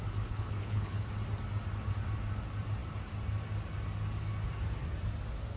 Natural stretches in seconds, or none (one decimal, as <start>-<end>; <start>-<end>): 1.0-5.6